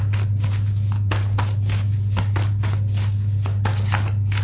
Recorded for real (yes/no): yes